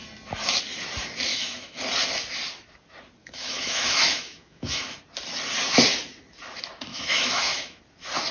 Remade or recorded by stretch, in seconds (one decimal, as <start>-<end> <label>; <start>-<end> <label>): 0.0-1.3 recorded; 1.3-1.8 remade; 1.8-3.2 recorded; 3.2-5.0 remade; 5.0-6.9 recorded; 6.9-7.8 remade; 7.8-8.3 recorded